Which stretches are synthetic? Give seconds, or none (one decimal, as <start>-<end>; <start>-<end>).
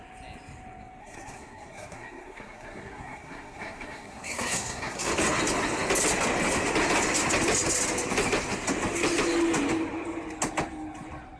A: 1.0-5.1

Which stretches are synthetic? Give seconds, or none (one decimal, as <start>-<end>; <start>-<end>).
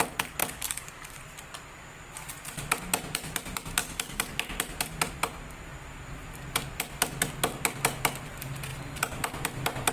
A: 0.4-1.2; 3.8-4.3